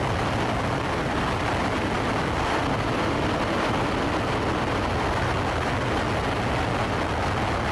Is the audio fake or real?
real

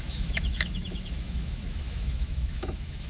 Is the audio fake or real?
fake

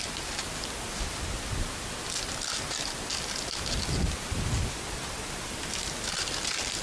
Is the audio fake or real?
real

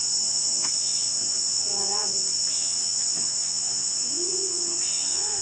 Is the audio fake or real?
fake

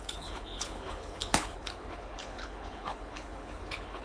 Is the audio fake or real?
fake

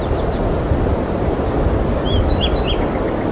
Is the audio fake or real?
real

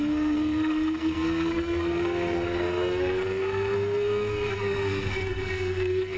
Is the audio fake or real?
fake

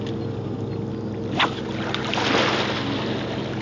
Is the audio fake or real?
real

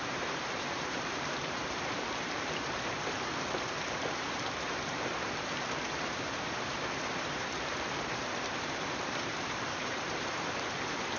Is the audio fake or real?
fake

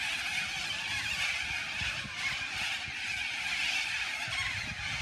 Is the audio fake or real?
real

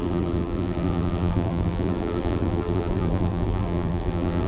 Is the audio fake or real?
fake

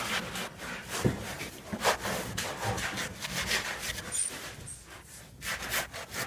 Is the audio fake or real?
real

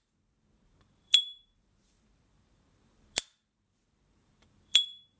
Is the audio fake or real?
fake